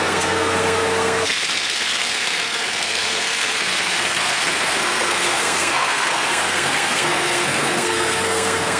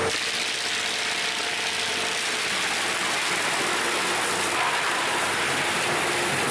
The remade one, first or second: first